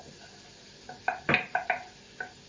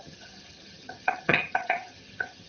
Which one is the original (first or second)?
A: first